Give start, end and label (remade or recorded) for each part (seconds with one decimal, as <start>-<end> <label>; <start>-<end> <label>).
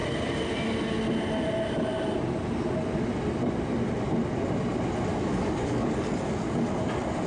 0.0-5.1 recorded; 5.1-6.7 remade; 6.7-7.3 recorded